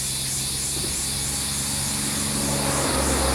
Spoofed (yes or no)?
no